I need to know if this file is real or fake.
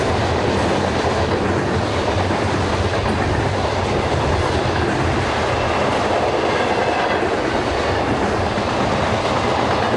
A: real